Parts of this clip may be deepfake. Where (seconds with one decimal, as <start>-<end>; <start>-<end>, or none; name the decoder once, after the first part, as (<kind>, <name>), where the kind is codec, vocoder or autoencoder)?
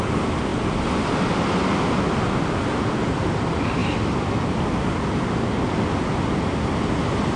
none